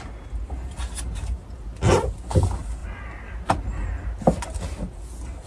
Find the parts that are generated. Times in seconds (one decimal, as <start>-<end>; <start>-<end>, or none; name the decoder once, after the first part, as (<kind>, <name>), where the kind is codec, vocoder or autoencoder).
none